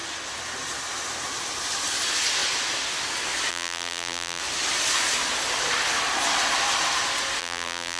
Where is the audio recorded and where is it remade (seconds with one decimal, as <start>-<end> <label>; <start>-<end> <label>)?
0.0-3.5 recorded; 3.5-4.4 remade; 4.4-7.4 recorded; 7.4-8.0 remade